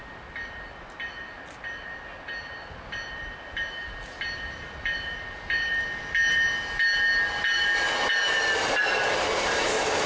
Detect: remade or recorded recorded